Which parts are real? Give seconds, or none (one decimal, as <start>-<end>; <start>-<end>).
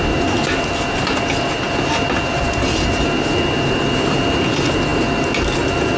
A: 0.0-6.0